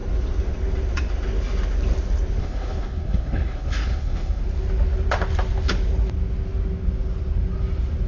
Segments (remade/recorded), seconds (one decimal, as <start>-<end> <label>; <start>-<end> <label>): 0.0-2.4 recorded; 2.4-4.4 remade; 4.4-8.1 recorded